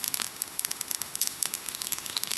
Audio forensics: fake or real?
fake